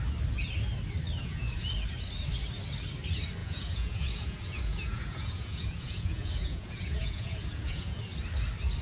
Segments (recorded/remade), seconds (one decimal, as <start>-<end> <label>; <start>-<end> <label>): 0.0-1.1 recorded; 1.1-1.7 remade; 1.7-3.4 recorded; 3.4-8.0 remade; 8.0-8.8 recorded